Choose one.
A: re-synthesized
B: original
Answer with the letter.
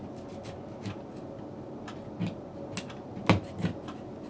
B